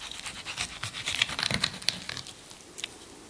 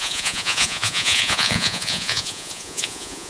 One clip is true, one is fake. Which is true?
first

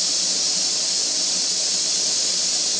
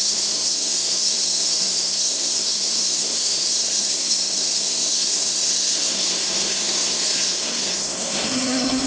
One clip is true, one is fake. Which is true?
first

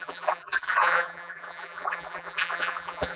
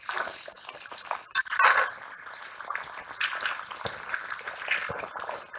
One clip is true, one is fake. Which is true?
second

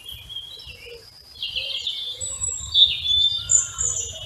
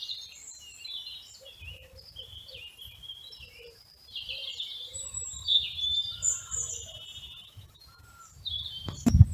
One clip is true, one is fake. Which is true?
first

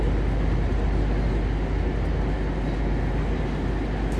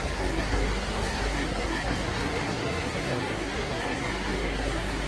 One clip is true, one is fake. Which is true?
first